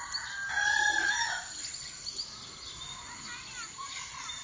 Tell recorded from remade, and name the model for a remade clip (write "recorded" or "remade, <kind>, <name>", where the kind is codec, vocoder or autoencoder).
recorded